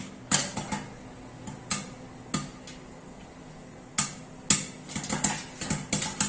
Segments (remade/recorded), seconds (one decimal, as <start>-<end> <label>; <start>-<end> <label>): 0.0-6.3 recorded